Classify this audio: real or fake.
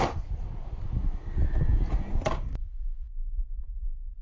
fake